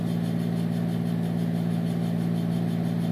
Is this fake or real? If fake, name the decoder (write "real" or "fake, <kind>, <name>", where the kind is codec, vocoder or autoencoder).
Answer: real